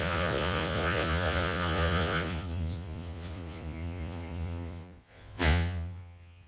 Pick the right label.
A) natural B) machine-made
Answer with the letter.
B